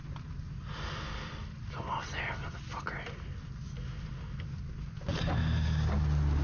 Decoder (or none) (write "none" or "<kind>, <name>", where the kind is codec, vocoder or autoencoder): none